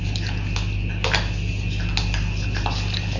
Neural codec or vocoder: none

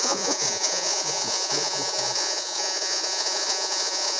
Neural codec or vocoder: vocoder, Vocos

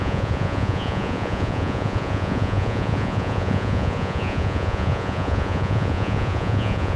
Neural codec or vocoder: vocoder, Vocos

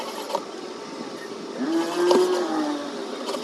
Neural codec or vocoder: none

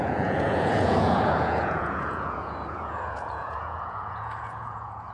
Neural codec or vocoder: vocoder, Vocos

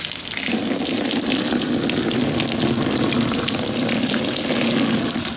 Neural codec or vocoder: none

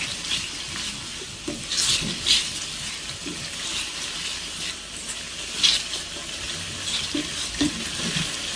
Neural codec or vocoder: none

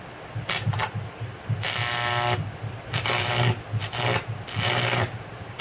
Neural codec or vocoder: none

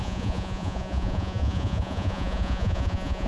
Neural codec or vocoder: vocoder, Vocos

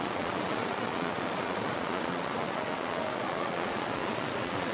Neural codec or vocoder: vocoder, Vocos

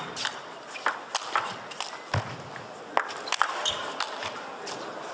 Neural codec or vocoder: none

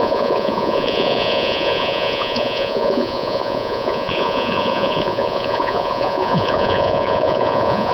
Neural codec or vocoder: vocoder, Vocos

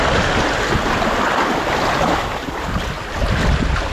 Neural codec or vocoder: none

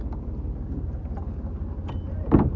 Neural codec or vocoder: none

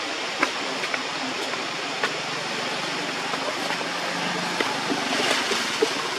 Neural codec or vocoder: none